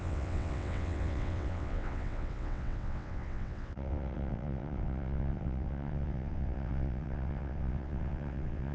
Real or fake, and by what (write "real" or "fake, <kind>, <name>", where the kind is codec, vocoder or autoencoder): fake, vocoder, WaveNeXt